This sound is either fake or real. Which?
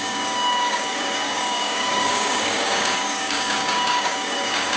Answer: fake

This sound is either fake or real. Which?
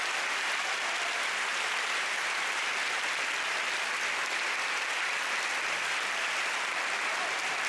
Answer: fake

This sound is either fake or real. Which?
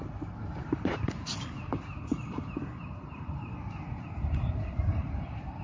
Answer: fake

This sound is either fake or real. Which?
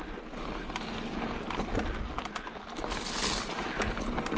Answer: real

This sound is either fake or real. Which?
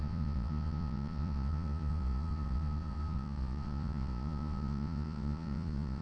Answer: fake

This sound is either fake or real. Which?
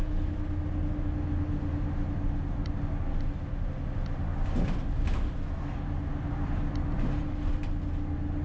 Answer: real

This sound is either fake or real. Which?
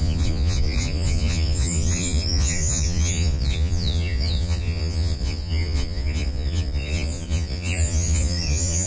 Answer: fake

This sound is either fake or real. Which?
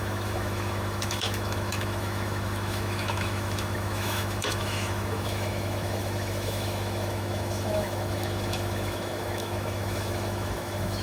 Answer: fake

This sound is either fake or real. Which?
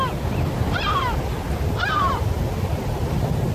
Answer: real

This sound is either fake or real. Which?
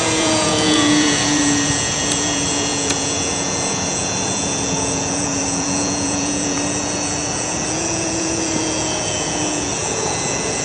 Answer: fake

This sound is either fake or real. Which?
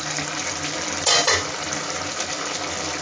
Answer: real